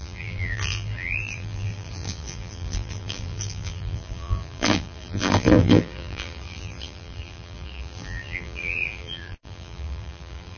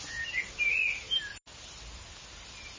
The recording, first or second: second